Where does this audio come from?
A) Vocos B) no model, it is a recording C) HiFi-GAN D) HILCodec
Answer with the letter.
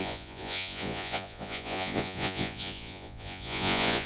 A